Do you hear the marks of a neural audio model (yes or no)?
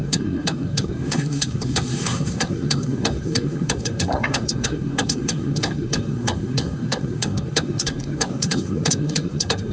yes